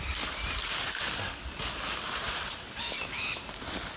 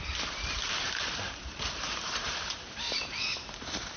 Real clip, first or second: first